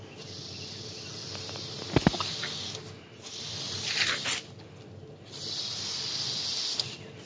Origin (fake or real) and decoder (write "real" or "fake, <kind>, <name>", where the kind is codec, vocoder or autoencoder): real